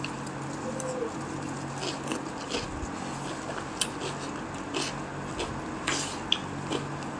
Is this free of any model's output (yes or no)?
yes